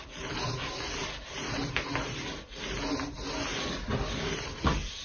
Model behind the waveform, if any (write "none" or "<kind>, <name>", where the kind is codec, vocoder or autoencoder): none